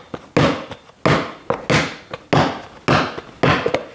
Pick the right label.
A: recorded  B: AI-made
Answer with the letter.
A